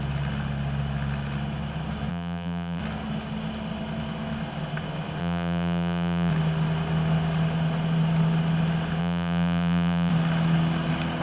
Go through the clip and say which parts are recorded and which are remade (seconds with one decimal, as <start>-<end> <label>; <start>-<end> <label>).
0.0-2.1 recorded; 2.1-2.8 remade; 2.8-5.2 recorded; 5.2-6.3 remade; 6.3-9.0 recorded; 9.0-10.1 remade; 10.1-11.2 recorded